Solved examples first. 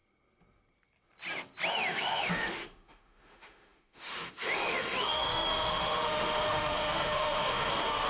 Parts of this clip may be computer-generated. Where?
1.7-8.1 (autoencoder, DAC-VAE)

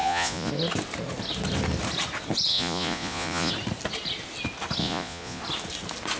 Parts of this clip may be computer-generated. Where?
0.0-0.5 (vocoder, Vocos); 2.5-3.5; 4.8-5.4

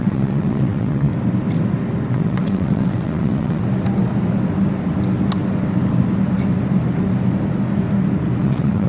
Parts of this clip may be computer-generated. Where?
0.0-1.1 (vocoder, WaveNeXt); 2.1-3.6; 8.4-8.9

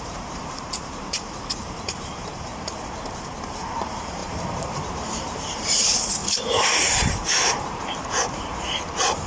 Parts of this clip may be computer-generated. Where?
0.0-2.5 (vocoder, BigVGAN v2); 3.4-6.2; 7.3-9.3

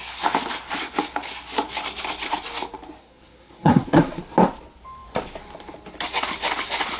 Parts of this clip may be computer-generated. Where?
3.0-4.2 (codec, SNAC)